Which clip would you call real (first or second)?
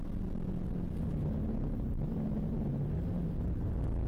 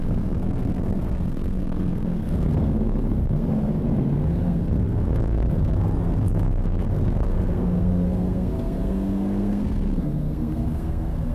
first